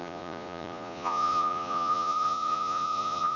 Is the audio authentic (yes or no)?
no